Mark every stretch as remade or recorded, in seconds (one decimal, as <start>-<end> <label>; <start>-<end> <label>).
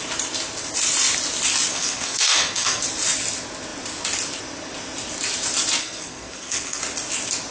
0.0-1.7 recorded; 1.7-2.8 remade; 2.8-5.8 recorded; 5.8-6.8 remade; 6.8-7.5 recorded